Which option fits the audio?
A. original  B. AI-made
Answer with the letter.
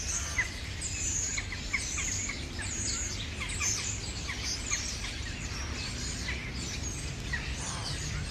A